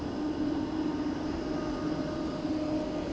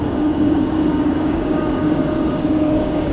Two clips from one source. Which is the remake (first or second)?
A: second